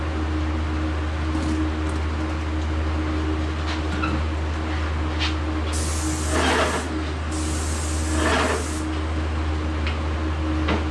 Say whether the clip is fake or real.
real